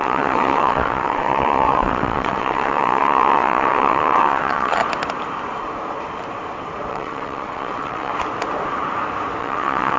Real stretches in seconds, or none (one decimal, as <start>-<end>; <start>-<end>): 4.8-6.9; 8.1-9.4